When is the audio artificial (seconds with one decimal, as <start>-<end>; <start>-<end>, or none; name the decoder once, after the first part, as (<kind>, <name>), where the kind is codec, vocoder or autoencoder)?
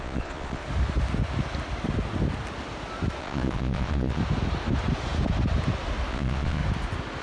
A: 0.0-0.6 (vocoder, Vocos); 3.2-4.2; 6.1-6.6